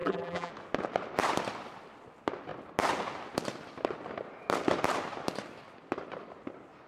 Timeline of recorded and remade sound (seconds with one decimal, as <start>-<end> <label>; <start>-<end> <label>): 0.0-0.5 remade; 0.5-6.9 recorded